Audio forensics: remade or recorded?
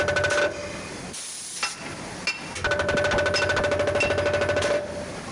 recorded